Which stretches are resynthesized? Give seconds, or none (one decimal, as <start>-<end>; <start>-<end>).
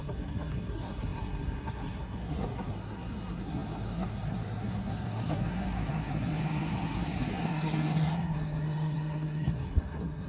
0.0-10.3